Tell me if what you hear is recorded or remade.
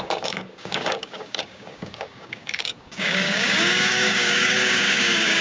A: remade